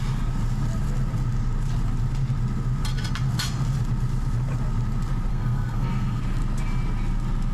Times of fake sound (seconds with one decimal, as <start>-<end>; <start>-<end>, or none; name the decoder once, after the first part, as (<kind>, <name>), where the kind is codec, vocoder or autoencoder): 5.3-6.2 (codec, SNAC)